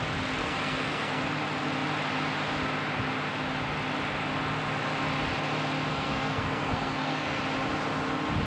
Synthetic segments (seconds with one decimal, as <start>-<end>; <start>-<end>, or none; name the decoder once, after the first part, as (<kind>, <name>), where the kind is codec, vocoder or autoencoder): 0.4-1.2 (codec, SNAC); 5.9-7.4

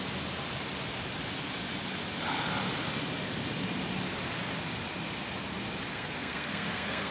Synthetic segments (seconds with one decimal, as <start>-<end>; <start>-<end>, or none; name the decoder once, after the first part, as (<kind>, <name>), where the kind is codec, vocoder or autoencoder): 5.9-7.1 (codec, SNAC)

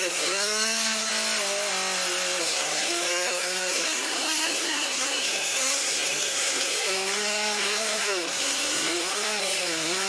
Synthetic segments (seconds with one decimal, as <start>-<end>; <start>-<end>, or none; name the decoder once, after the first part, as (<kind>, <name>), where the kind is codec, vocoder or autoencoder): 0.0-1.1 (codec, SNAC); 2.4-10.1

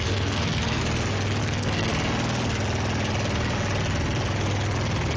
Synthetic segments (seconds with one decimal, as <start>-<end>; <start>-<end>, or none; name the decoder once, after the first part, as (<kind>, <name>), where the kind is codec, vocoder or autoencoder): 0.0-0.8 (codec, SNAC); 1.4-1.9

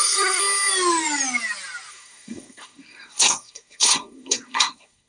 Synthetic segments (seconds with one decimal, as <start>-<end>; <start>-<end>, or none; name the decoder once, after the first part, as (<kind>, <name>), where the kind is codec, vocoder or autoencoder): 0.0-0.4 (codec, SNAC); 1.9-5.1

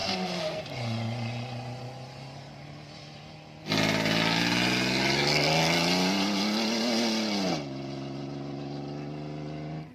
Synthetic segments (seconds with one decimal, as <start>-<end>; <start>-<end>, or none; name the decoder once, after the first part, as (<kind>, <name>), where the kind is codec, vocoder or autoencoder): 0.0-0.6 (codec, SNAC)